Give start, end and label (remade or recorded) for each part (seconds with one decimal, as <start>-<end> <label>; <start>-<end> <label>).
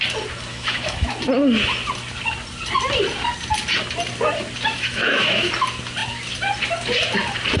0.0-0.5 recorded; 0.5-1.1 remade; 1.1-4.7 recorded; 4.7-5.5 remade; 5.5-7.6 recorded